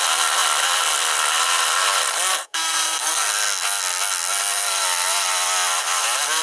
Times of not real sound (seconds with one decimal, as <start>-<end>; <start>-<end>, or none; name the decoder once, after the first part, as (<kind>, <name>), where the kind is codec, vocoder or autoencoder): 2.4-3.3 (codec, SNAC)